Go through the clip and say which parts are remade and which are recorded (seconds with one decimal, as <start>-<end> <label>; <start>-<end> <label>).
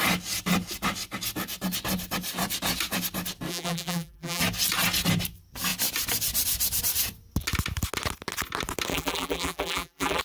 0.0-3.5 recorded; 3.5-4.4 remade; 4.4-8.9 recorded; 8.9-10.2 remade